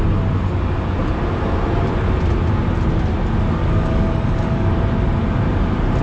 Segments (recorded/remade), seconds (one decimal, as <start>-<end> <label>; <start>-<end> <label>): 0.0-3.6 recorded; 3.6-4.7 remade; 4.7-6.0 recorded